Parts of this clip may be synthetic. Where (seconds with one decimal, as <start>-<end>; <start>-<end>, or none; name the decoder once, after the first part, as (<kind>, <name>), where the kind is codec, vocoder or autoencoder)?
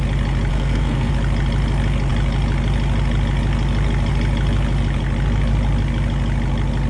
0.5-1.1 (codec, SNAC)